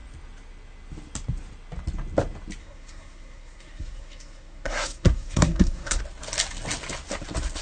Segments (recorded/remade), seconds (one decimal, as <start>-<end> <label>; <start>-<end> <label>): 0.0-2.6 recorded; 2.6-6.0 remade; 6.0-7.6 recorded